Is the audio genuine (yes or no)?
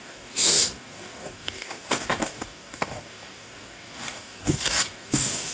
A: no